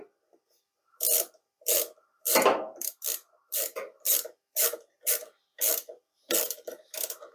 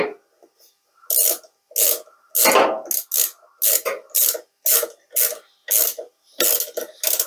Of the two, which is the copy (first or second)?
first